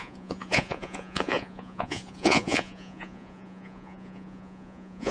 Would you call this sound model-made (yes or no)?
yes